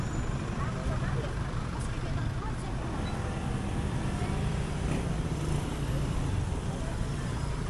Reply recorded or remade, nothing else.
remade